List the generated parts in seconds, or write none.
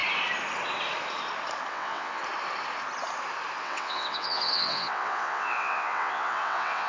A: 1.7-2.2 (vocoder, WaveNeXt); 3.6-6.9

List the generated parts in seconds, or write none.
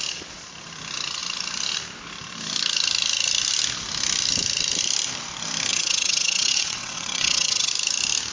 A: 5.7-7.7 (vocoder, WaveNeXt)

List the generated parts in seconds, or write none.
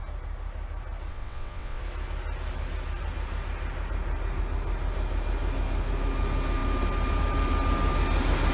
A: 1.1-1.8 (vocoder, WaveNeXt)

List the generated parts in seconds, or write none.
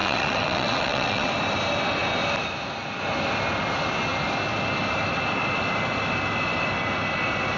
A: 0.0-1.3 (vocoder, WaveNeXt)